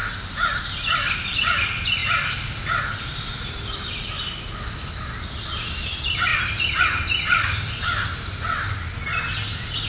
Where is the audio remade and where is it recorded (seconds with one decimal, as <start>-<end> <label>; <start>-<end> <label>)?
0.0-9.9 remade